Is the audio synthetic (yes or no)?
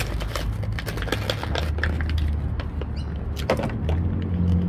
no